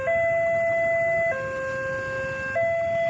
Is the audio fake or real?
real